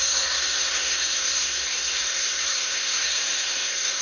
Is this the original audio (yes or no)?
no